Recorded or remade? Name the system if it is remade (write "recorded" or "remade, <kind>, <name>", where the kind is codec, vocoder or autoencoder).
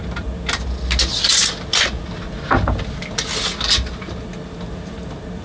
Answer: recorded